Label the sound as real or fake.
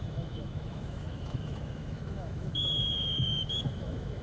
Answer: fake